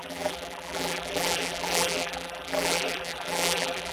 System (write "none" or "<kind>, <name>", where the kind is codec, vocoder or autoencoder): vocoder, BigVGAN v2